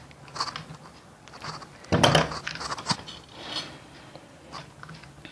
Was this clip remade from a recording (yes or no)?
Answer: no